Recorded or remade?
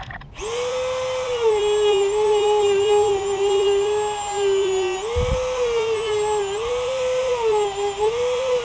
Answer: recorded